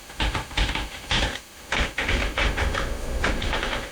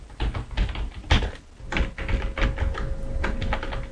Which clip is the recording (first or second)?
second